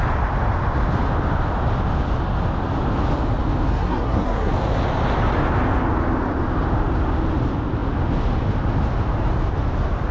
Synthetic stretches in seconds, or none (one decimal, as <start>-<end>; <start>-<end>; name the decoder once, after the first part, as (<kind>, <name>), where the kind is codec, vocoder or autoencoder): 3.7-4.5 (codec, SNAC)